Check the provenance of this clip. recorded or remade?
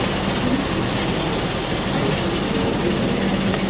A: recorded